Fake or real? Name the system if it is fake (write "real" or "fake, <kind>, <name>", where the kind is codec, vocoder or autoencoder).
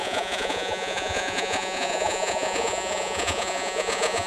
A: fake, vocoder, Vocos